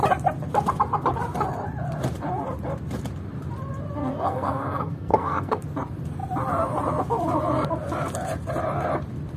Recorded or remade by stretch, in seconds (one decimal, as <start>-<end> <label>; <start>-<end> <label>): 0.0-4.0 recorded; 4.0-5.6 remade; 5.6-9.4 recorded